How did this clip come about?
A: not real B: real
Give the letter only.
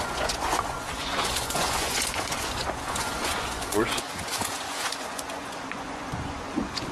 A